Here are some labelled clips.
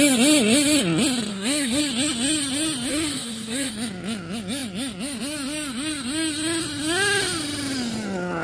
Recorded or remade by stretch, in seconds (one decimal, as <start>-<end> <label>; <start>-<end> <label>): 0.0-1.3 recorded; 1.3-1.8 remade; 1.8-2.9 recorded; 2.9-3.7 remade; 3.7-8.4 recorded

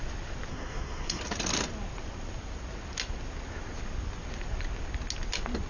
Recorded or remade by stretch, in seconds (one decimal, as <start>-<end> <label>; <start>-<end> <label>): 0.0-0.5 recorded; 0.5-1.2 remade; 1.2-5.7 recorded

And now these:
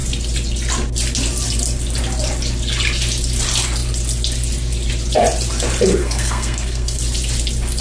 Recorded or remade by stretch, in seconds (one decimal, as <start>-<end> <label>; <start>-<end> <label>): 0.0-6.0 recorded; 6.0-7.0 remade; 7.0-7.8 recorded